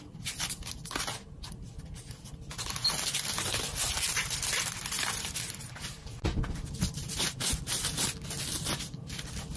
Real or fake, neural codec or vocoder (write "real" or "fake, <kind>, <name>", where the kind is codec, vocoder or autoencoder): real